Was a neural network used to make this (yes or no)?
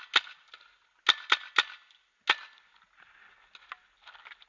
no